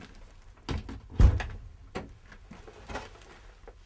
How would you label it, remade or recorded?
recorded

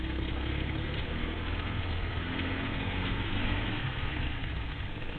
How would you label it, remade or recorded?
remade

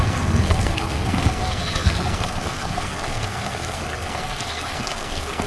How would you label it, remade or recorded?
remade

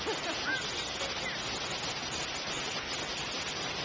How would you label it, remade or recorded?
recorded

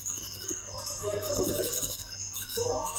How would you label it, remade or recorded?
remade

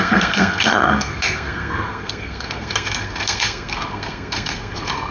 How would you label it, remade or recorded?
remade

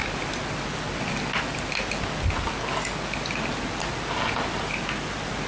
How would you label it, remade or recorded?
recorded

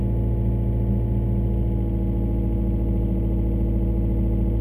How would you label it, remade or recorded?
recorded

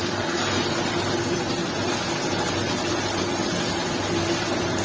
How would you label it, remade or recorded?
recorded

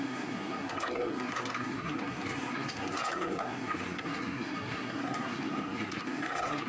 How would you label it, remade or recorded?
remade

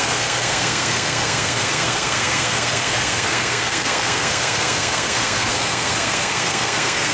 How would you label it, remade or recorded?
remade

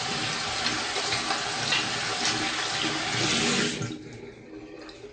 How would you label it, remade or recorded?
recorded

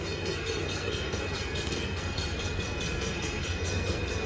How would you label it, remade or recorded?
remade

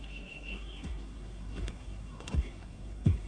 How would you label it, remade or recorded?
remade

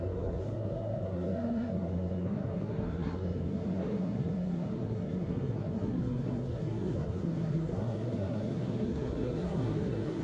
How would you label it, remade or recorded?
remade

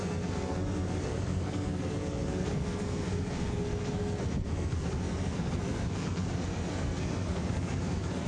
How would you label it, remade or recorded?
remade